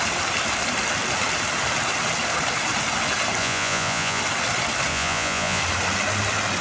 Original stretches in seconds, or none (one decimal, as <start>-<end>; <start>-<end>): 0.0-3.4; 4.2-4.9; 5.6-6.6